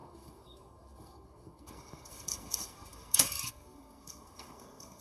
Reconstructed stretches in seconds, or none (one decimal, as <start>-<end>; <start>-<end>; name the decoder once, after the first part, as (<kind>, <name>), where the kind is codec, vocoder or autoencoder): 0.0-5.0 (codec, SNAC)